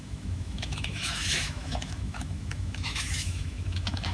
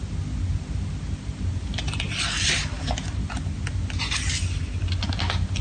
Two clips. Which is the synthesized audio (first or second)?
first